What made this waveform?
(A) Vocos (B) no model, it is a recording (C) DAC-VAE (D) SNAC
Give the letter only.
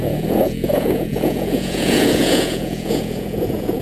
A